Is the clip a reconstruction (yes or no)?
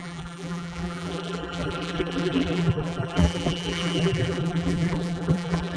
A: yes